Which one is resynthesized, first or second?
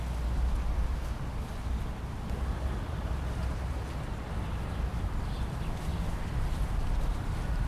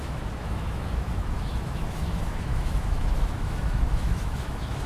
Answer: second